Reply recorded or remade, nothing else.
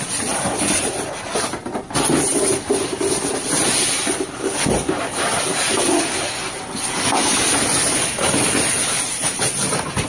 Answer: recorded